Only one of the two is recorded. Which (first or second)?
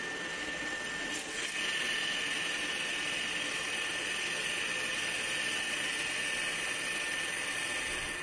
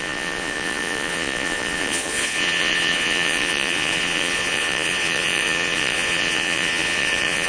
first